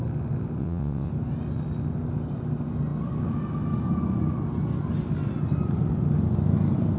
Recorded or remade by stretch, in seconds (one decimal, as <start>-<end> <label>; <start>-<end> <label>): 0.0-0.6 recorded; 0.6-1.1 remade; 1.1-7.0 recorded

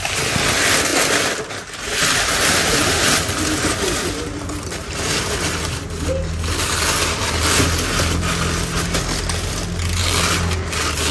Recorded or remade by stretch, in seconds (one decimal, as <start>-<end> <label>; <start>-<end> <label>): 0.0-11.1 recorded